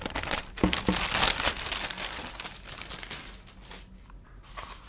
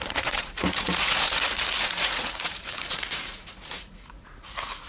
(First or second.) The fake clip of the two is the second